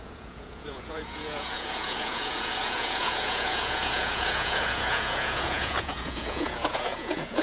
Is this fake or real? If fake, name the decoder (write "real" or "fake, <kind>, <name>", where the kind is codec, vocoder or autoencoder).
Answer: fake, vocoder, Vocos